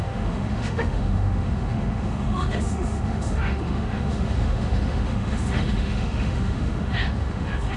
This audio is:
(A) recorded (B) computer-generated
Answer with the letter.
B